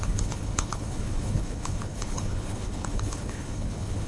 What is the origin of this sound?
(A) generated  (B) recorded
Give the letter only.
A